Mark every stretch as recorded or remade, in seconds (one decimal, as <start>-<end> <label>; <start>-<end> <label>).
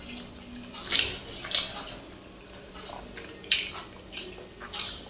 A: 0.0-5.1 recorded